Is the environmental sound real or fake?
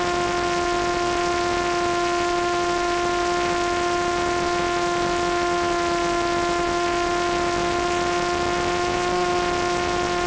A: real